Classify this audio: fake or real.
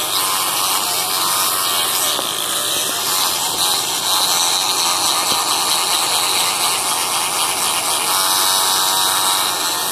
real